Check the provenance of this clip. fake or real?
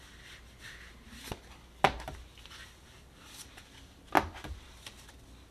real